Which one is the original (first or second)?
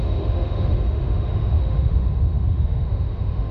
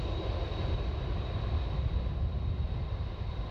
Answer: second